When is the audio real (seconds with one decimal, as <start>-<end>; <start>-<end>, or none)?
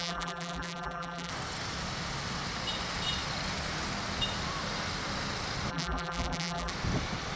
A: 1.3-5.7; 6.7-7.4